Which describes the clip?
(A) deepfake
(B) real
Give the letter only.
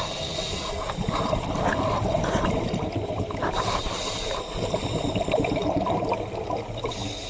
B